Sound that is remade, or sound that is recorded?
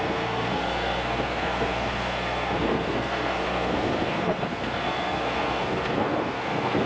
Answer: remade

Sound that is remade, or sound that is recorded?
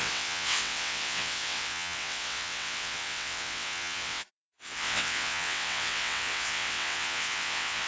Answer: remade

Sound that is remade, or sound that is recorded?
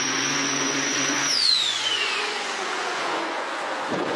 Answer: remade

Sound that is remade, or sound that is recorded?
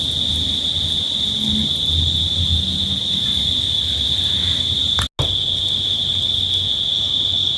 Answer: recorded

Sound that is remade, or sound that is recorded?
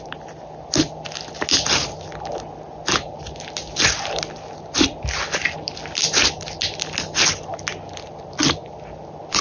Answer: recorded